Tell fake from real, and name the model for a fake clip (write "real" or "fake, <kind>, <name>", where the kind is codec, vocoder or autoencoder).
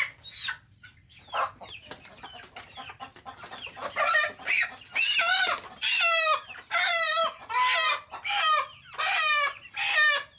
real